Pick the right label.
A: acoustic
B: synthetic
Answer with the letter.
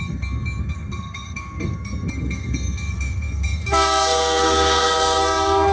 B